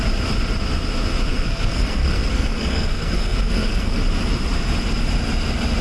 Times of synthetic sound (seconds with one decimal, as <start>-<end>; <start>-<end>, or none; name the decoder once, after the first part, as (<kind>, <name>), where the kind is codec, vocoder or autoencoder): 1.3-4.0 (codec, SNAC)